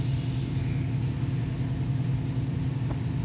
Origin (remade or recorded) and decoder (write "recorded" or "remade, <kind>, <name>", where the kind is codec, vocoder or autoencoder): recorded